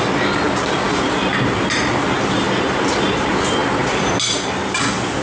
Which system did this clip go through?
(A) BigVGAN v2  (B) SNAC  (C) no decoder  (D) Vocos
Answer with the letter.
C